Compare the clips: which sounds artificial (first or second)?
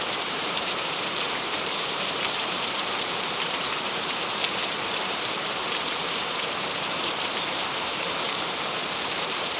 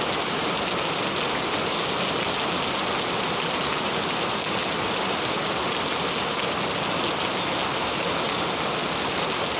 first